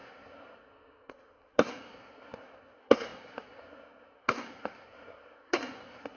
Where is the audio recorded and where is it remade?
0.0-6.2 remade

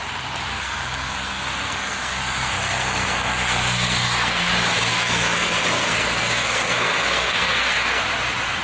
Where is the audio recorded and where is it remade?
0.0-0.5 recorded; 0.5-4.5 remade; 4.5-4.9 recorded; 4.9-8.0 remade; 8.0-8.6 recorded